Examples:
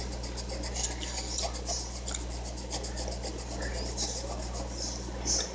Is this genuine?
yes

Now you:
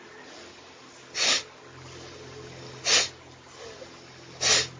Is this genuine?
yes